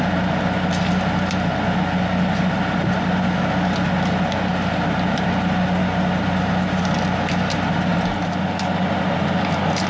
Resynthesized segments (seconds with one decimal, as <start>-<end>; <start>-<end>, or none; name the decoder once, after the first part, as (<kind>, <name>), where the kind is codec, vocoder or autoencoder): none